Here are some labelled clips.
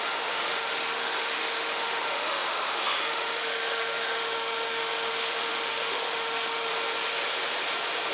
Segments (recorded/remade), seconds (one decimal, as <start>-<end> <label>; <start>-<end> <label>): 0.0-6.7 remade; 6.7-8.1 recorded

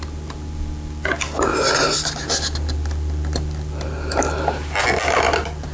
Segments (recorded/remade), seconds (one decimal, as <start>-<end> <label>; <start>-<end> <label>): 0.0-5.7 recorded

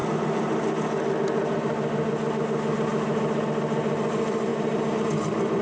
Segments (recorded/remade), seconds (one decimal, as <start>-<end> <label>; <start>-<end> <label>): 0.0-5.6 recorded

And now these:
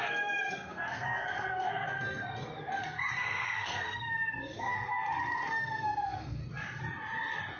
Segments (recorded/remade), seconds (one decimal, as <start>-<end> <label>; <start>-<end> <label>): 0.0-6.4 remade; 6.4-7.6 recorded

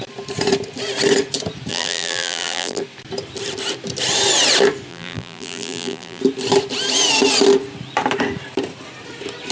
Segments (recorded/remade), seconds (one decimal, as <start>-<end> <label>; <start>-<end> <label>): 0.0-1.7 recorded; 1.7-2.8 remade; 2.8-4.9 recorded; 4.9-6.2 remade; 6.2-9.5 recorded